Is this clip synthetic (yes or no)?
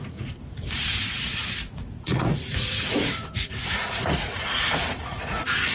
yes